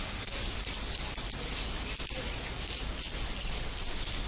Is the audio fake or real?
real